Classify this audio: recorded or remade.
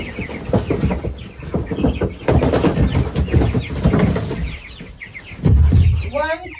recorded